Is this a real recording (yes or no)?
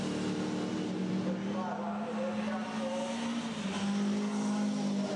yes